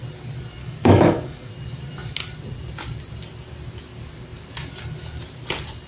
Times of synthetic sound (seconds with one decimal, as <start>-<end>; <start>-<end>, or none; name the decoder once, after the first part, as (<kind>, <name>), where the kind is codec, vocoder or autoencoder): 0.6-1.5 (codec, DAC)